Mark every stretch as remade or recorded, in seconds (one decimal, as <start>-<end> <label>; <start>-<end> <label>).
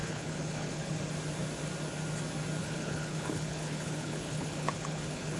0.0-1.0 remade; 1.0-2.6 recorded; 2.6-5.4 remade